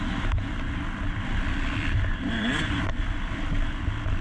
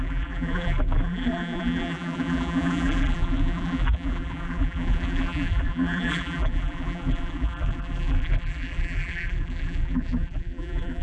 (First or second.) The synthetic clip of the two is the second